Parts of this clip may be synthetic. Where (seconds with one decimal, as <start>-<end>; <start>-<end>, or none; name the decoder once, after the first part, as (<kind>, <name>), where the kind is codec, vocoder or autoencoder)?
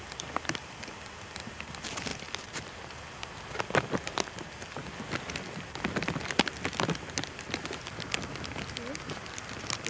none